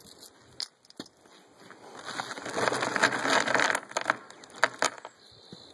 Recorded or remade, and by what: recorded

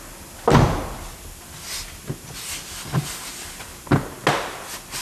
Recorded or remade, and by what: recorded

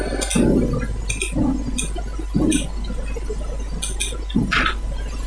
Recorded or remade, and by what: recorded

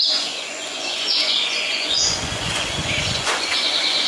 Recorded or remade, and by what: remade, vocoder, Vocos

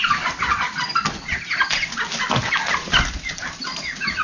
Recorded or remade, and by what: recorded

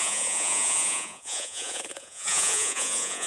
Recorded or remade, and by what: remade, vocoder, Vocos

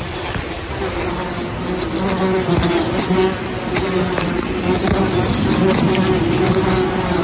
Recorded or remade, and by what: recorded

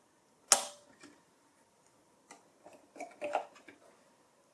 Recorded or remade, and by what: recorded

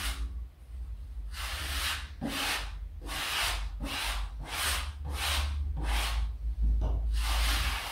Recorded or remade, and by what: recorded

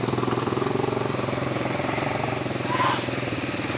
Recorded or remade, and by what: remade, vocoder, BigVGAN v2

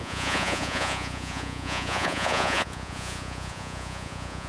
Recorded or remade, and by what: remade, vocoder, Vocos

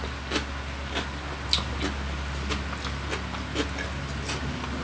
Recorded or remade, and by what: recorded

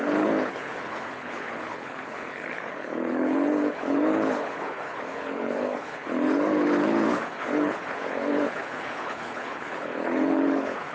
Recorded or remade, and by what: remade, codec, HILCodec